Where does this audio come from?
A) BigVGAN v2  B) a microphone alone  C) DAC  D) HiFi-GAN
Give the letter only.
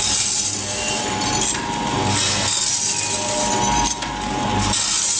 B